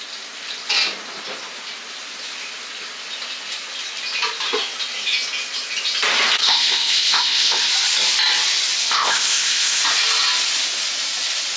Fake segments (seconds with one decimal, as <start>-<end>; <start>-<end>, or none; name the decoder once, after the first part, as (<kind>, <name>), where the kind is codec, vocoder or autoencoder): 6.4-7.7 (codec, ZipCodec); 8.8-9.8